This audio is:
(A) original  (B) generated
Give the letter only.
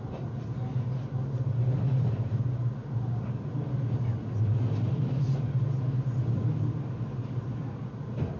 A